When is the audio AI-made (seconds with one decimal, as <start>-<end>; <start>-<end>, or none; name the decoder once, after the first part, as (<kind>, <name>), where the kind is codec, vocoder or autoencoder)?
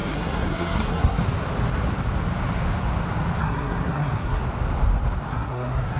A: 0.0-1.2 (codec, SNAC); 3.4-4.4; 5.3-6.0